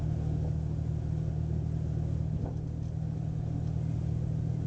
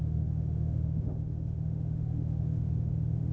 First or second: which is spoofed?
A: second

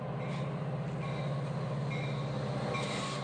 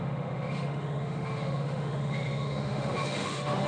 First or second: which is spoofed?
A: second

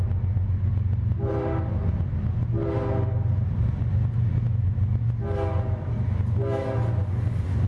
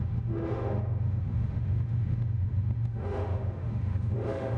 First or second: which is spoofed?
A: second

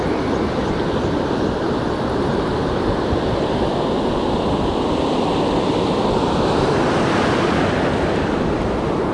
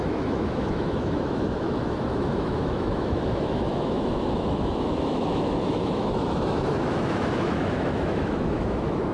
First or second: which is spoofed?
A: second